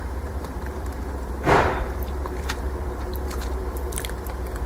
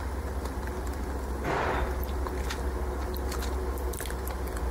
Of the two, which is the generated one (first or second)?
first